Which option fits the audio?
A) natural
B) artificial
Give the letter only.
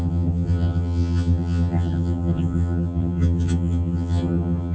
B